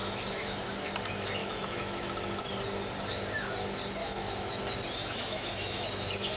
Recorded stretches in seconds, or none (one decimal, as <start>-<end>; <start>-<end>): 0.9-1.4; 2.0-4.0; 4.6-5.0